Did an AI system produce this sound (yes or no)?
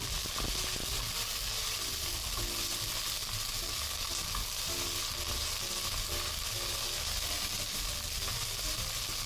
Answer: no